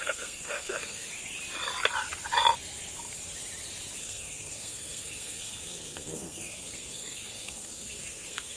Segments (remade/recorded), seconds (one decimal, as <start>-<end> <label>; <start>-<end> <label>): 0.0-1.1 remade; 1.1-4.0 recorded; 4.0-8.6 remade